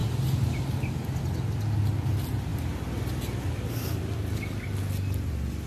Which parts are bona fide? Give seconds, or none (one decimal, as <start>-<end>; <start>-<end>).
0.0-5.7